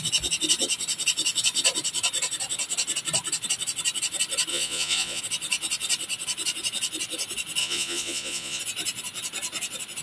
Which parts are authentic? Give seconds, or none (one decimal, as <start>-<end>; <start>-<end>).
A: 0.0-4.5; 5.2-7.6; 8.6-10.0